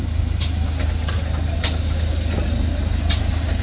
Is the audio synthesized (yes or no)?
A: no